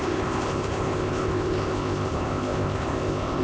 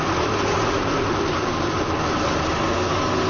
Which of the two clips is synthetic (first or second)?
first